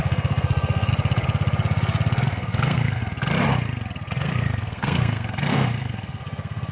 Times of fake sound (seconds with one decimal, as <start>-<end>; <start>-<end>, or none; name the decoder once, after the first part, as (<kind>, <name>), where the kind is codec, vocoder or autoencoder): 0.0-0.9 (codec, SNAC); 2.3-3.0; 4.1-6.7